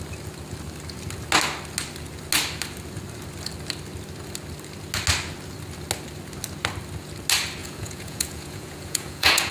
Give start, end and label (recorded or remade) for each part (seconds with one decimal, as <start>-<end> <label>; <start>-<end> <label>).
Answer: 0.0-7.6 recorded; 7.6-9.5 remade